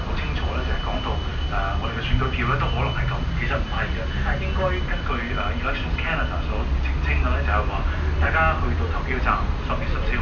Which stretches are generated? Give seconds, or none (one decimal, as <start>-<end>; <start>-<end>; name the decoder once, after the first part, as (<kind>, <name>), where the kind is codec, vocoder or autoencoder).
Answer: none